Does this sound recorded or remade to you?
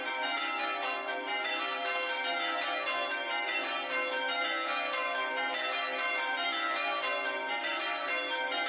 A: recorded